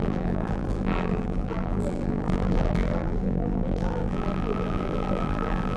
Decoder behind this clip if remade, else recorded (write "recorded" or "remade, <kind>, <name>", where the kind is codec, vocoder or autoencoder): remade, vocoder, BigVGAN v2